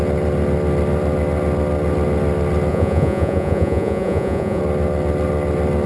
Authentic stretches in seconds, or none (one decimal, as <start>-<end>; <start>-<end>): 0.0-2.7; 4.6-5.9